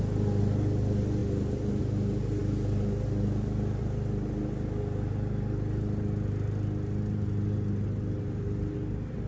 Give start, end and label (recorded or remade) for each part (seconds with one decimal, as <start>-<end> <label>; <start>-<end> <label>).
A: 0.0-9.3 recorded